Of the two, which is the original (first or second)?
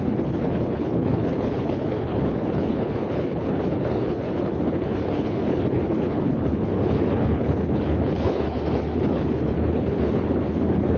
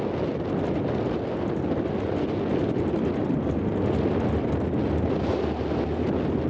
second